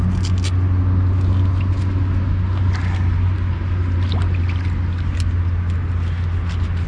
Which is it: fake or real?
real